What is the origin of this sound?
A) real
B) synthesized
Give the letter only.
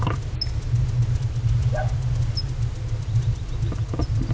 A